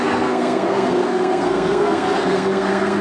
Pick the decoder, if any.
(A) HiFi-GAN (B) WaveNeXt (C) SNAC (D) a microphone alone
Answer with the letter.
C